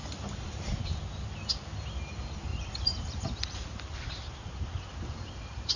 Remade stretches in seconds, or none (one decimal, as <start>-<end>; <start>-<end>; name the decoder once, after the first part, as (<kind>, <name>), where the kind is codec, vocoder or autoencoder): 0.0-0.8 (vocoder, BigVGAN v2); 2.5-5.8

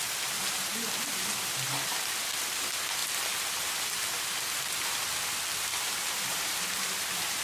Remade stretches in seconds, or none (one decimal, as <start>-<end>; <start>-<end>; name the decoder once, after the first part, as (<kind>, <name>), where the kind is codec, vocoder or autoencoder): 5.7-7.4 (vocoder, BigVGAN v2)

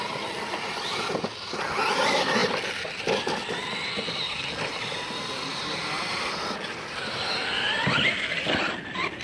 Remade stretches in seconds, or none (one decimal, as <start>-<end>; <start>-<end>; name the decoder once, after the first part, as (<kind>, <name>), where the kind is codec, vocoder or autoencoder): 5.5-6.4 (vocoder, BigVGAN v2)

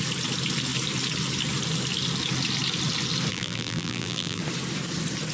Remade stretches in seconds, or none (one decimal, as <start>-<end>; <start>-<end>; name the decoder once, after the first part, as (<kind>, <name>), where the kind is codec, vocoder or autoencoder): 3.3-4.4 (vocoder, BigVGAN v2)